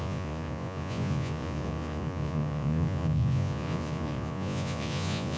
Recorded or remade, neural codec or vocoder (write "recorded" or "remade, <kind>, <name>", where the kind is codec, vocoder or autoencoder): remade, vocoder, Vocos